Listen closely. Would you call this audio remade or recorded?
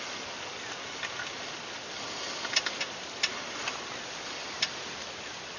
recorded